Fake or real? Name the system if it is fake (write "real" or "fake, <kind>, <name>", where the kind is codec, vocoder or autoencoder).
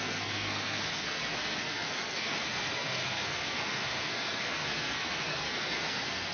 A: fake, codec, SNAC